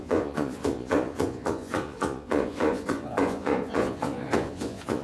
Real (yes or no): no